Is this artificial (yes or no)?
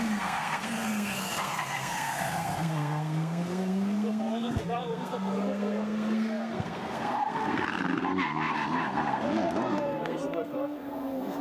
yes